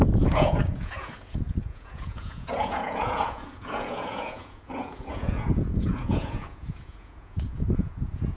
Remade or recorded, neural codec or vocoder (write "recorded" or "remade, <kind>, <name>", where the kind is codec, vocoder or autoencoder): remade, vocoder, Vocos